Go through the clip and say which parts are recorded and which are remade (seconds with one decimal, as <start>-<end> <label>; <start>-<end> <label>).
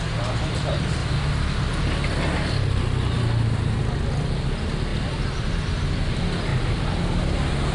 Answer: 0.0-4.9 recorded; 4.9-5.5 remade; 5.5-7.7 recorded